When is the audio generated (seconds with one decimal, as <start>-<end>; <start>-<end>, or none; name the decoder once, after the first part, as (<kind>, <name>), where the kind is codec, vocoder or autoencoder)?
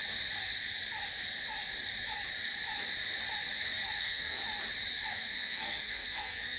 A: 4.0-4.4 (codec, SNAC); 5.1-6.6